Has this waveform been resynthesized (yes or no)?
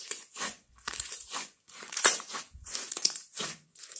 yes